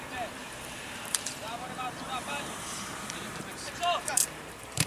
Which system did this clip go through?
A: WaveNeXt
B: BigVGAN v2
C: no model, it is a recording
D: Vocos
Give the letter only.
B